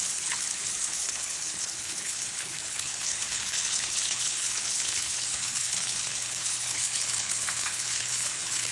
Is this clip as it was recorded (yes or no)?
no